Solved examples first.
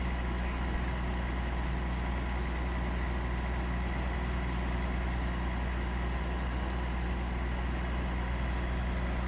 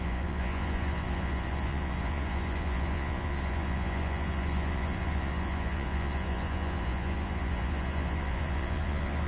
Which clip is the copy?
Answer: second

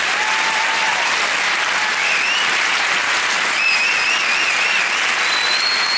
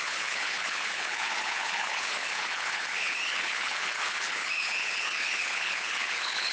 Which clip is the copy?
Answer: second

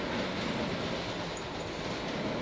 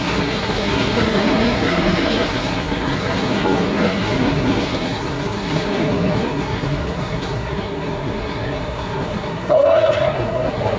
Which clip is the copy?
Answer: second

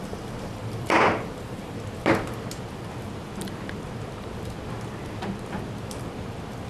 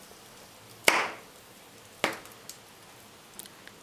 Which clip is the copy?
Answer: first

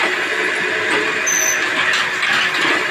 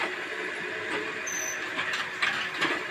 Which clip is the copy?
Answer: second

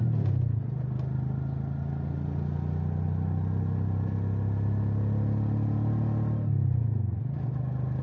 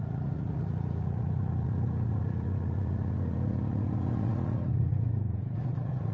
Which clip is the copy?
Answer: second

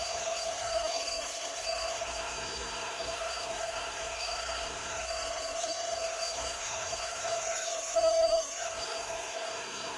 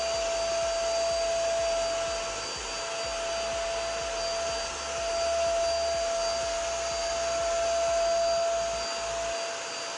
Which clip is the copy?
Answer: first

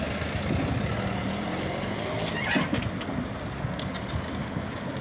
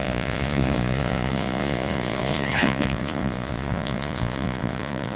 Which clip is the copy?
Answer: second